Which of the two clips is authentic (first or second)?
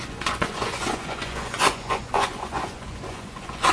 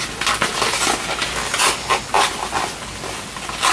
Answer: second